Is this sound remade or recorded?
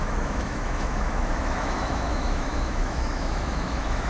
remade